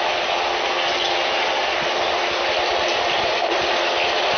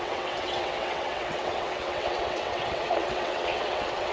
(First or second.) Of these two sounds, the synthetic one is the second